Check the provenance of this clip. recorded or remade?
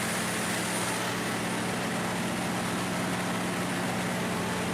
recorded